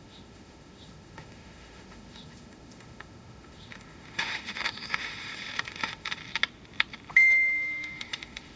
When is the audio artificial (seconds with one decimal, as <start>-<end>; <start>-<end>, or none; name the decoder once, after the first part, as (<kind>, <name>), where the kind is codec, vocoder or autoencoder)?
0.0-6.2 (autoencoder, DAC-VAE); 7.1-8.6